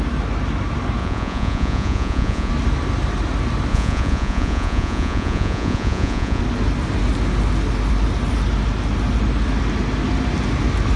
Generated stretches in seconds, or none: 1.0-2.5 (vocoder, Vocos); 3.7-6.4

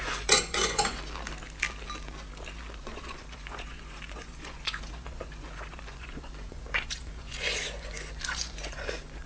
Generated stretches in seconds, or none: 0.0-1.0 (vocoder, Vocos); 2.8-9.3

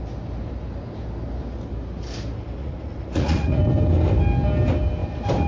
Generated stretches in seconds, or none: 2.6-3.6 (vocoder, Vocos)

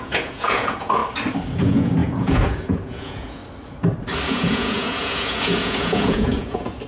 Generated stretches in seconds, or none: 0.0-1.0 (vocoder, Vocos); 1.6-3.4; 4.3-6.9

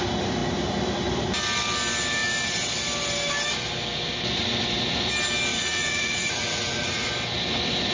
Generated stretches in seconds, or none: 5.5-7.1 (vocoder, Vocos)

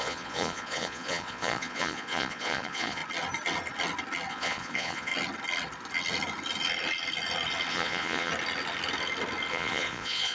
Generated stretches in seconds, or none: 0.0-3.0 (vocoder, Vocos); 4.3-5.1; 7.7-8.3; 9.5-10.3